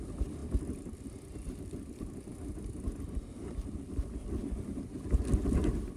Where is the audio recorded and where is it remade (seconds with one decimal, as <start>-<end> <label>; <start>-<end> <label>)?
0.0-6.0 recorded